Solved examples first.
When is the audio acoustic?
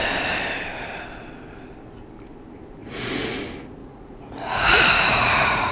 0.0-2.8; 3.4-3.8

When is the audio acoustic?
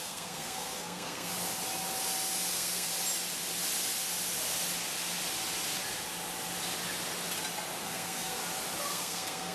1.3-2.5; 2.9-7.8; 8.4-8.9